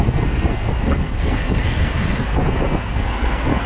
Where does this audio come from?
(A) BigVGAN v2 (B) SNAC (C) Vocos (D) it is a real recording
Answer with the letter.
B